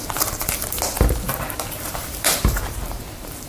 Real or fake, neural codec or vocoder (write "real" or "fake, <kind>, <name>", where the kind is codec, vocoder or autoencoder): fake, vocoder, BigVGAN v2